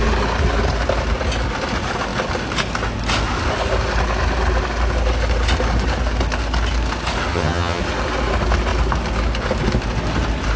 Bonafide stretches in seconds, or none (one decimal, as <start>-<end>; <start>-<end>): 0.0-7.3; 7.8-10.6